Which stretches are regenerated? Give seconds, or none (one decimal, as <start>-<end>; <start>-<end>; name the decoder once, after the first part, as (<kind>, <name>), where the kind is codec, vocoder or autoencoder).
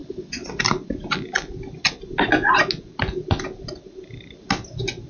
0.0-0.6 (vocoder, WaveNeXt)